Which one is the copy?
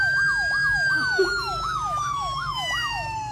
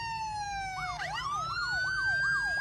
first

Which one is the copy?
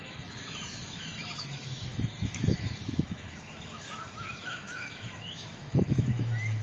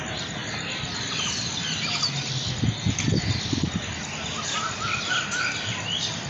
first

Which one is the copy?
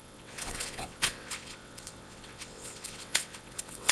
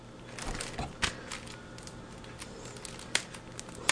first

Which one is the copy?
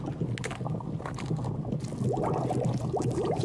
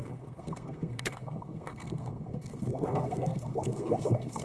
second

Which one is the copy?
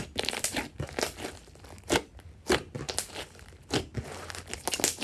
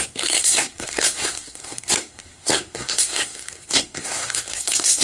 second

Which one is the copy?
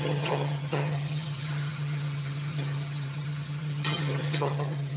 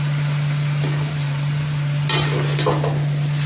first